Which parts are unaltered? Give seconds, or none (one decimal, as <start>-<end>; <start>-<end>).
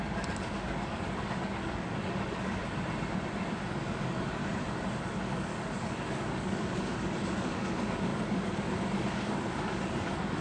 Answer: 2.6-3.7; 4.4-5.0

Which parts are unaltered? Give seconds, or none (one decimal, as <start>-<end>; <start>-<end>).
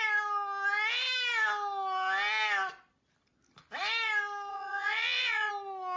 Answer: 0.0-4.5; 5.5-6.0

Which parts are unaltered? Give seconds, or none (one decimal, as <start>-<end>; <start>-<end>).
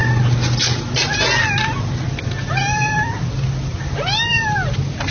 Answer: 0.0-5.1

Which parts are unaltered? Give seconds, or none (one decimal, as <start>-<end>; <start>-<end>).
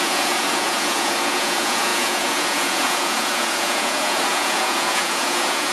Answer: none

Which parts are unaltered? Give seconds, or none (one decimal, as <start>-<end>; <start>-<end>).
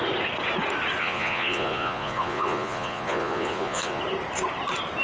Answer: 0.0-1.0; 4.0-5.0